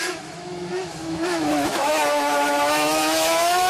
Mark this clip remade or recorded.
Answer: remade